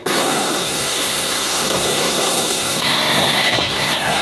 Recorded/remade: remade